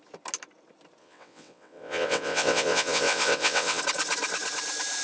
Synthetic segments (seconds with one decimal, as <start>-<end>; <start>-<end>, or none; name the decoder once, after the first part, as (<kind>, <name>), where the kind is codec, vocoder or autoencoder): 1.0-3.8 (vocoder, WaveNeXt)